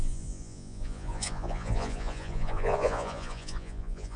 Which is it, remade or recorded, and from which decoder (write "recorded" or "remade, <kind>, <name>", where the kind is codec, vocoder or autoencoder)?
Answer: remade, vocoder, Vocos